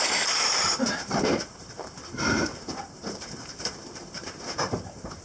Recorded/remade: remade